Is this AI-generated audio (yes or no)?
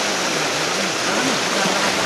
no